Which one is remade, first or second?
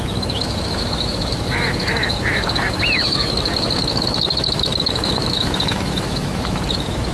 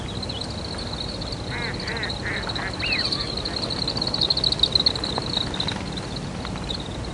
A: first